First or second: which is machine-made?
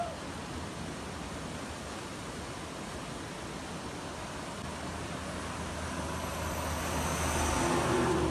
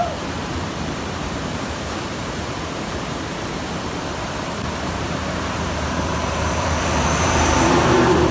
second